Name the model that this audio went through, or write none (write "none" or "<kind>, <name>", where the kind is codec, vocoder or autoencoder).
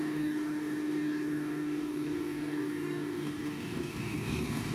codec, DAC